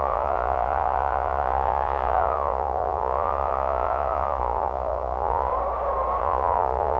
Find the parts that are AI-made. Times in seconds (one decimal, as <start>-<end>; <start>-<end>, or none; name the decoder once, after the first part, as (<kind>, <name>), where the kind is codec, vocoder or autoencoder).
0.0-5.5 (vocoder, Vocos); 6.2-7.0